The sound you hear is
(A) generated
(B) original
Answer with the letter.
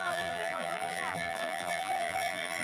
A